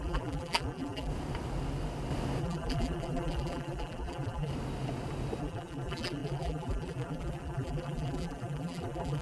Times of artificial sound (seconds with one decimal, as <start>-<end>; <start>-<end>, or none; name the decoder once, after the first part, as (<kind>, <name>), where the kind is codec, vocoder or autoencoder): 0.0-1.1 (vocoder, BigVGAN v2); 2.4-4.5; 5.4-9.2